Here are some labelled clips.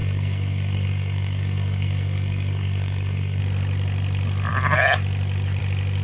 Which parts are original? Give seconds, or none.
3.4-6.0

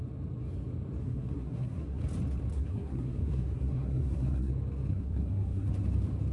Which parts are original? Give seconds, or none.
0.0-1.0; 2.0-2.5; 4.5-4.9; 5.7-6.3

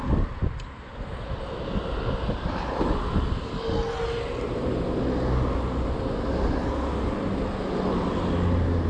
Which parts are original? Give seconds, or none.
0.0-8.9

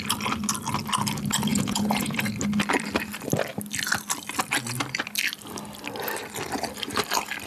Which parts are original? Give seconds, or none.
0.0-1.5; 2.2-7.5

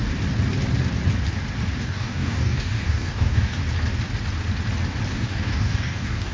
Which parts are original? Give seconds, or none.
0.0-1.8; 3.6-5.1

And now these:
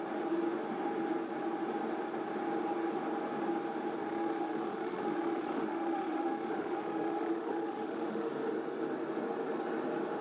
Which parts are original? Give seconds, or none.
0.0-4.0; 8.3-10.2

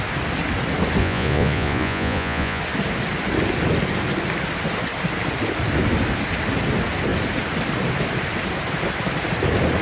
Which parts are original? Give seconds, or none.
0.0-1.0; 2.6-9.8